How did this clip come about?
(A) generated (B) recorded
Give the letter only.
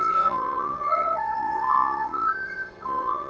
A